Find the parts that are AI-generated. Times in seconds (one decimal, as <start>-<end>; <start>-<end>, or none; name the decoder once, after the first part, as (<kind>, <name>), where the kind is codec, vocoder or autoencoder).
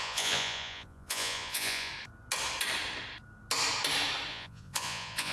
0.0-1.9 (vocoder, Vocos); 4.3-5.3